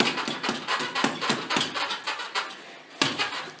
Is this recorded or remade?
recorded